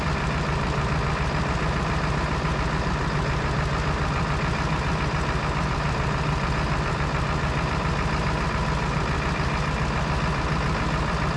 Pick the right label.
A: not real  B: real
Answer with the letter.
B